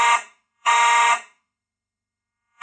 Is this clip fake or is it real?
fake